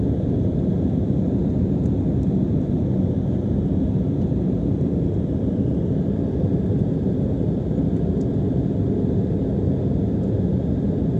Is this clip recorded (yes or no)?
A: yes